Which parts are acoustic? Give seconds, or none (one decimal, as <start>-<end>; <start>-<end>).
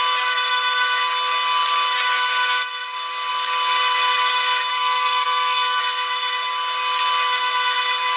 0.0-4.7; 5.8-8.2